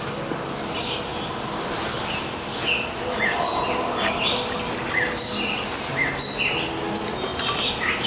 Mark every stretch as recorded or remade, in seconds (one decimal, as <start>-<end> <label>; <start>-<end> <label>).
0.0-8.1 recorded

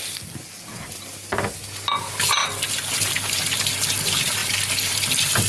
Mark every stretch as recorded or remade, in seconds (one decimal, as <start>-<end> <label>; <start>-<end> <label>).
0.0-5.5 recorded